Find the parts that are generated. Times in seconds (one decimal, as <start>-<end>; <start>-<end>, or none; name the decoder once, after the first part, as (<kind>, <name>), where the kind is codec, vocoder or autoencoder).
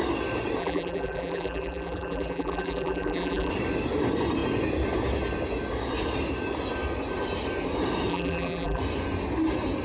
0.6-3.5 (vocoder, BigVGAN v2); 8.1-8.8